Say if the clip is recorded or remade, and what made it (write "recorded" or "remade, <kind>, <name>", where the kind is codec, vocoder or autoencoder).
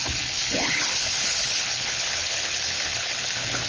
remade, codec, HILCodec